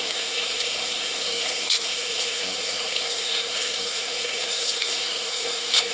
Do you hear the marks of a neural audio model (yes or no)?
yes